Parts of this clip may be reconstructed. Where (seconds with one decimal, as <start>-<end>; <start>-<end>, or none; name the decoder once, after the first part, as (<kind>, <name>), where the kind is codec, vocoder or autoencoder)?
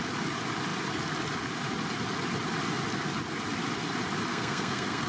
4.3-5.1 (codec, SNAC)